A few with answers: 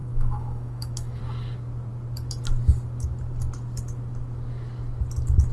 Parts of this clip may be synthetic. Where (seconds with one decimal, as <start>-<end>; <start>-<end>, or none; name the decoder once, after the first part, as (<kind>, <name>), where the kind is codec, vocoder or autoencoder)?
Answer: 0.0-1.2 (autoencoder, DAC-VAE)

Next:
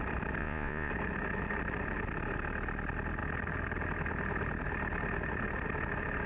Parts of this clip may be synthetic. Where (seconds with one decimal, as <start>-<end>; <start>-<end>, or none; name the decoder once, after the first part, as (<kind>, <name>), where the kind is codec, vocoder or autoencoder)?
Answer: 0.4-0.9 (vocoder, Vocos)

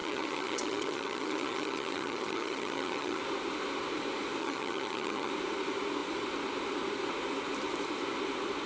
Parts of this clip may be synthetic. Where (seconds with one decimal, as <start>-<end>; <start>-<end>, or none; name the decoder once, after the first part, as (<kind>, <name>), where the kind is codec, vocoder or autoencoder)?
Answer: 0.0-3.2 (vocoder, HiFi-GAN); 4.4-5.3

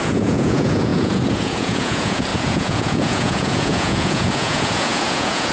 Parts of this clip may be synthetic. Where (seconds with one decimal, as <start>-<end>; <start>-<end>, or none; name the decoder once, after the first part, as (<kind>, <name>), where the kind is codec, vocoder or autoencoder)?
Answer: 0.0-5.5 (vocoder, Vocos)

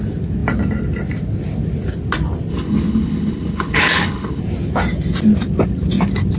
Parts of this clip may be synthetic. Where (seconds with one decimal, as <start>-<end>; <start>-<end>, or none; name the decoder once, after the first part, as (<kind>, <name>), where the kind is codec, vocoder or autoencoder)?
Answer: 2.5-4.4 (codec, HILCodec)

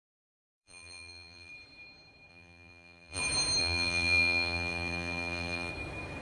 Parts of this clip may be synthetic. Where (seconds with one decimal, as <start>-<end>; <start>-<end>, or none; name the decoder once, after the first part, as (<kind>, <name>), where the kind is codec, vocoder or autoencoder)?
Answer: 0.5-1.5 (vocoder, BigVGAN v2); 2.3-3.2; 3.6-5.7

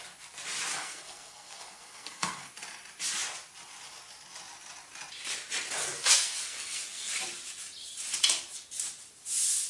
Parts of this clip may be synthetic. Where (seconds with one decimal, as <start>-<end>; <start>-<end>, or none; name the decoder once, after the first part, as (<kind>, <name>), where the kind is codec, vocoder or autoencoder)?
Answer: 0.7-2.5 (codec, SNAC); 5.8-7.1